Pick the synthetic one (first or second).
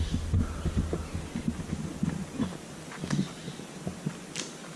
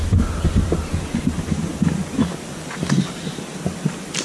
second